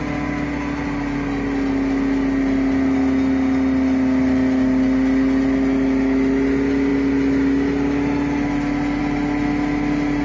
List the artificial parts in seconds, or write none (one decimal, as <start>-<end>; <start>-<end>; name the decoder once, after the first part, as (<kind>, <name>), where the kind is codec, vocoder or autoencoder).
none